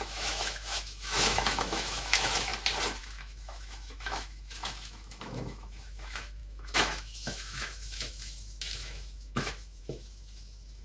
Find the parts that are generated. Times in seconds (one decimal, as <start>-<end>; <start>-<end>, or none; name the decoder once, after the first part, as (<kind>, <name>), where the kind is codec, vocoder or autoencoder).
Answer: 0.0-2.5 (autoencoder, DAC-VAE); 3.0-10.8